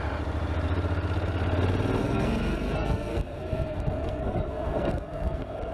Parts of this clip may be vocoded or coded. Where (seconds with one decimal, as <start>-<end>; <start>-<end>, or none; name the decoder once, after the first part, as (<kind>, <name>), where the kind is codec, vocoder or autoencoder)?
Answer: 2.0-5.7 (codec, SNAC)